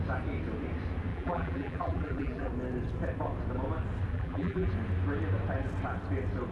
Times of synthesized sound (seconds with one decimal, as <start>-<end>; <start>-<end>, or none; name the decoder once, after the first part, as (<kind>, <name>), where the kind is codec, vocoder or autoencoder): 1.1-2.5 (vocoder, BigVGAN v2); 4.1-4.7